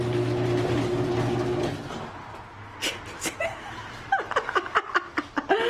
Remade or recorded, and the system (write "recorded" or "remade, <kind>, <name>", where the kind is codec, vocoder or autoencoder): recorded